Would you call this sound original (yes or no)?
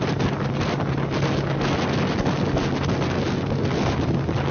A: yes